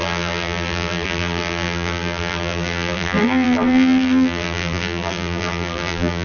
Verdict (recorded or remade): remade